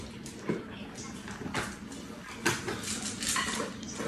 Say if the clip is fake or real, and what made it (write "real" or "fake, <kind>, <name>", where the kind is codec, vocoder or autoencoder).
real